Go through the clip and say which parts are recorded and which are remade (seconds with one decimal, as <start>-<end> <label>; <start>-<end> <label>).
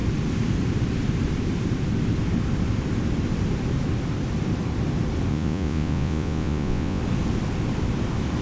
0.0-5.3 recorded; 5.3-7.0 remade; 7.0-8.4 recorded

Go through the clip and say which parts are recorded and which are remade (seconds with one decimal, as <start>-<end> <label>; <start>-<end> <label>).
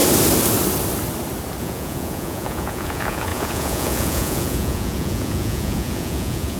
0.0-1.6 recorded; 1.6-6.6 remade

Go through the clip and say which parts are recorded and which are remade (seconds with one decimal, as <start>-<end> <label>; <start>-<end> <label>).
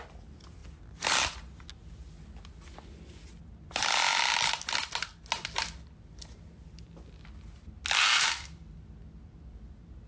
0.0-10.1 recorded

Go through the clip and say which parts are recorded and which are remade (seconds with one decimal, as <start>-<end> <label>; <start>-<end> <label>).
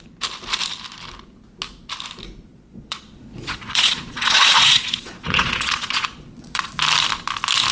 0.0-2.5 recorded; 2.5-6.7 remade; 6.7-7.7 recorded